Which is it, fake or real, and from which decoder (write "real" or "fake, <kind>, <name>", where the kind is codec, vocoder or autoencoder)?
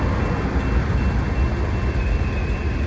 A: real